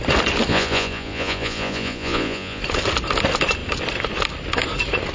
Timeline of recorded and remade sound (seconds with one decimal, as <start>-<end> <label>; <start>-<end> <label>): 0.0-0.5 recorded; 0.5-2.6 remade; 2.6-5.1 recorded